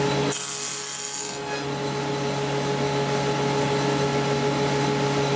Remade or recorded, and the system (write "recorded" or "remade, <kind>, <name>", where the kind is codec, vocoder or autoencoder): recorded